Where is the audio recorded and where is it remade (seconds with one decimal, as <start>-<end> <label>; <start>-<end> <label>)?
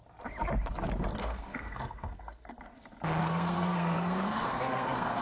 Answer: 0.0-1.1 recorded; 1.1-2.6 remade; 2.6-3.2 recorded; 3.2-5.2 remade